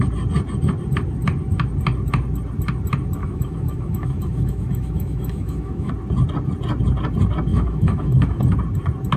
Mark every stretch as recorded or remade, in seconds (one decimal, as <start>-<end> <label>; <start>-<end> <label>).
0.0-3.2 recorded; 3.2-5.9 remade; 5.9-7.5 recorded; 7.5-8.4 remade; 8.4-9.2 recorded